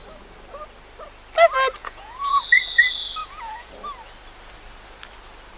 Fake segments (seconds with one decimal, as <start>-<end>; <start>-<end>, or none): 1.8-2.4; 3.2-3.7